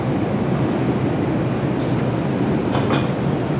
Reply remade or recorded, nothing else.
recorded